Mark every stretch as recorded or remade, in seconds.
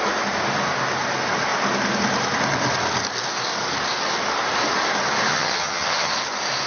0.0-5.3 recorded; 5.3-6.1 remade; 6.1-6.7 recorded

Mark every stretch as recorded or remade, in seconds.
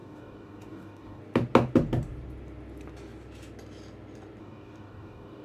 0.0-1.2 remade; 1.2-4.4 recorded; 4.4-5.4 remade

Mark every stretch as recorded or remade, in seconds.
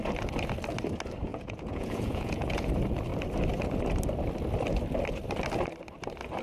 0.0-1.3 recorded; 1.3-2.7 remade; 2.7-6.4 recorded